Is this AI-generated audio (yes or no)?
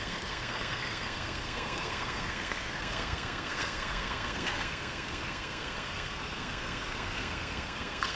yes